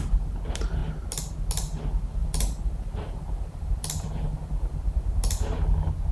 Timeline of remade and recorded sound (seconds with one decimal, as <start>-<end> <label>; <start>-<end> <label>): 0.0-2.2 recorded; 2.2-5.2 remade; 5.2-6.1 recorded